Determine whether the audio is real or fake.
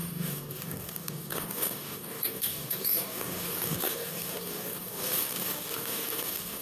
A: fake